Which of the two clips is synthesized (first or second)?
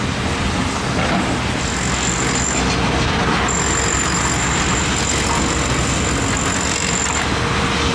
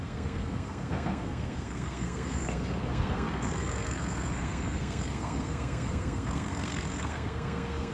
second